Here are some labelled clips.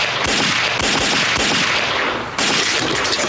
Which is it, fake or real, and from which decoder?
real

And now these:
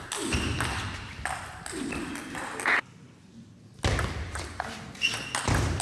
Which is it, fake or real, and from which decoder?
real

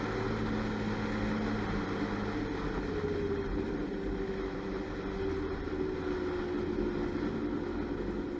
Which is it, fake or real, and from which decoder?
real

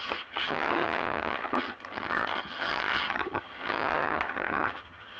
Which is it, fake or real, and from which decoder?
fake, vocoder, HiFi-GAN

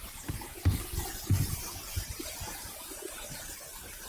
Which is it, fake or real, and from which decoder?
real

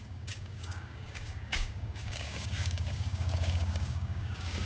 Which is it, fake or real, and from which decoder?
fake, codec, DAC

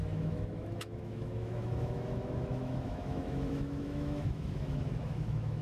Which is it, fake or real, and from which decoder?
fake, autoencoder, DAC-VAE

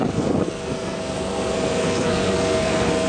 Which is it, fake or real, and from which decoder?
fake, codec, SNAC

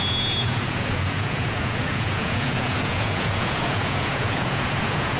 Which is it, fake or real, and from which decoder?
fake, vocoder, Vocos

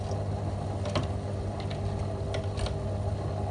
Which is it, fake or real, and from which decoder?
real